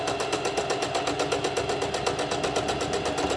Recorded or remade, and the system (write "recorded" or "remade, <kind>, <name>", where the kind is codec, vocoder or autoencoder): recorded